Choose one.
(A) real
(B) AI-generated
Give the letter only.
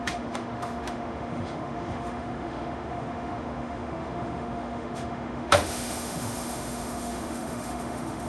B